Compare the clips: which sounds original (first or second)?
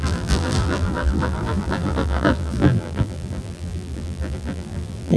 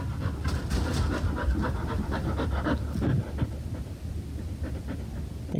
second